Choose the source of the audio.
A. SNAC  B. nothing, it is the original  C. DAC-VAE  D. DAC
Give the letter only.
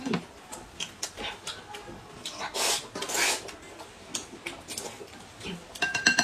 B